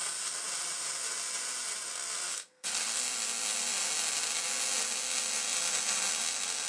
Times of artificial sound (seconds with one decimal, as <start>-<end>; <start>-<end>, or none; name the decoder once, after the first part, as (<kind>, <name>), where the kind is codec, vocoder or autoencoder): 2.3-3.0 (codec, SNAC)